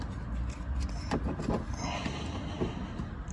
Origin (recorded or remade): recorded